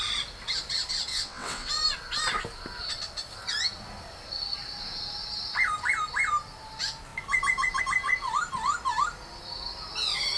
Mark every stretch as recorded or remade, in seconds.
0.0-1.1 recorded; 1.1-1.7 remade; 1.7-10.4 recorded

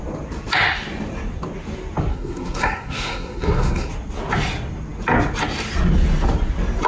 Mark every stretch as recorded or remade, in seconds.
0.0-2.1 recorded; 2.1-3.9 remade; 3.9-6.9 recorded

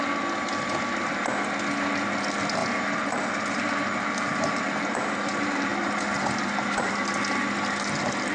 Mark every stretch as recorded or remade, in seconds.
0.0-2.6 recorded; 2.6-6.9 remade; 6.9-8.3 recorded

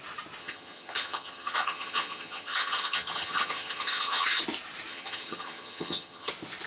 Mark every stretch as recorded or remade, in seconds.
0.0-0.4 recorded; 0.4-4.4 remade; 4.4-4.9 recorded; 4.9-6.3 remade; 6.3-6.7 recorded